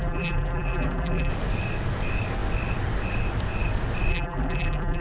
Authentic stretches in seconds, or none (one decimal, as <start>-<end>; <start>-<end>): 1.3-4.1